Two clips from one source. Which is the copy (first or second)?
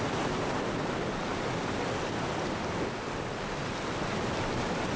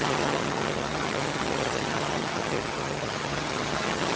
second